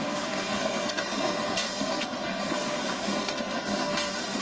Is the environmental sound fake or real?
fake